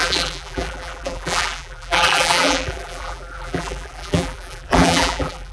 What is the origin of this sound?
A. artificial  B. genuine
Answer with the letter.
A